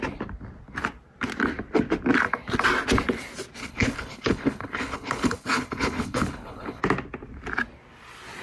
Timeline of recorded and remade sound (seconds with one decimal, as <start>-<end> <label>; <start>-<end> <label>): 0.0-3.6 recorded; 3.6-6.8 remade; 6.8-8.4 recorded